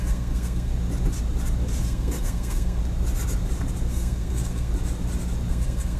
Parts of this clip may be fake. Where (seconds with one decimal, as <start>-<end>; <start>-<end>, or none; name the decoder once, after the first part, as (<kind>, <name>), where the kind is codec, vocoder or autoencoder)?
0.0-0.7 (codec, SNAC); 1.8-2.8; 3.9-4.7; 5.5-6.0

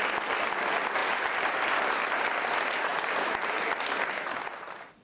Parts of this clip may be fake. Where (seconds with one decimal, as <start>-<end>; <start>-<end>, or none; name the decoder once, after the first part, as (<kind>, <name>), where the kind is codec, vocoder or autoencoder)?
none

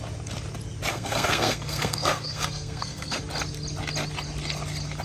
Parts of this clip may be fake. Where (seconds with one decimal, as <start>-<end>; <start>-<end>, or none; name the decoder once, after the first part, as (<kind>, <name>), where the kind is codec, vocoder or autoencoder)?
0.9-3.2 (codec, SNAC)